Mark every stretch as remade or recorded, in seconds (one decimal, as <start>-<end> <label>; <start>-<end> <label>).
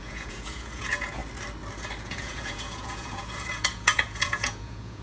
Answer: 0.0-1.2 remade; 1.2-2.0 recorded; 2.0-5.0 remade